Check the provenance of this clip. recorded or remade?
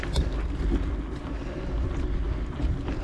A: recorded